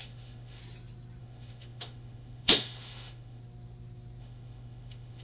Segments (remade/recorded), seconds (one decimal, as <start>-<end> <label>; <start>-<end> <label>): 0.0-0.6 remade; 0.6-1.2 recorded; 1.2-3.4 remade; 3.4-4.2 recorded; 4.2-5.2 remade